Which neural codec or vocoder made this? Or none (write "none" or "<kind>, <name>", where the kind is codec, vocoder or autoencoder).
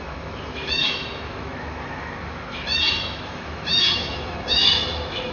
autoencoder, DAC-VAE